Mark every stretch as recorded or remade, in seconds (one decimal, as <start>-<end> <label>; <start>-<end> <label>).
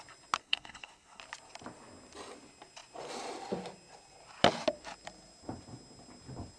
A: 0.0-0.4 recorded; 0.4-1.2 remade; 1.2-6.6 recorded